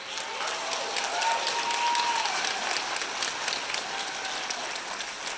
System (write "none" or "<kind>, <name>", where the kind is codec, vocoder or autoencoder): none